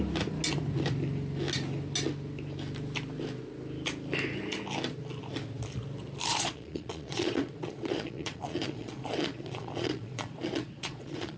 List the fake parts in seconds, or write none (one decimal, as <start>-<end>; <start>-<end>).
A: 6.3-11.4